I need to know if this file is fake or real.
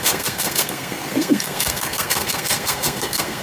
fake